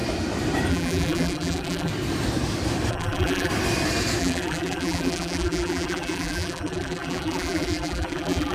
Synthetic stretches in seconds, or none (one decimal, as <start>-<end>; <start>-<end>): 0.7-1.9; 2.9-3.5; 4.2-8.5